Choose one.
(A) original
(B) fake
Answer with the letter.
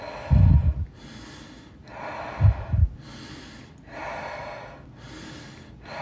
A